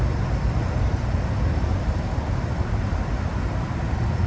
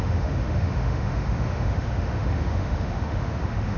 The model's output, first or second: second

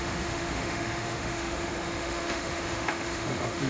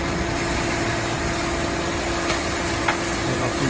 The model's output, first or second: first